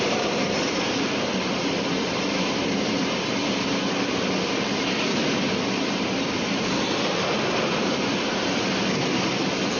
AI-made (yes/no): yes